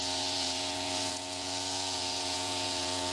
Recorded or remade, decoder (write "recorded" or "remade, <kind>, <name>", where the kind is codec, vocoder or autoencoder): remade, vocoder, Vocos